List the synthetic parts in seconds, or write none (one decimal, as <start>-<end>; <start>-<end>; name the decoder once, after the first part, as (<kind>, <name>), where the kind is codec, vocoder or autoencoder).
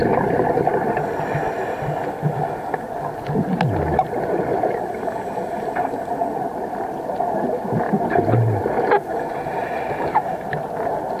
none